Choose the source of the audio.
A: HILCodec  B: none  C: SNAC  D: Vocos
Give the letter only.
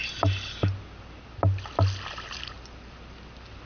B